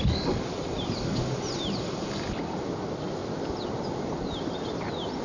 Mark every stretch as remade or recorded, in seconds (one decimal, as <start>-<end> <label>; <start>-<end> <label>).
0.0-5.2 recorded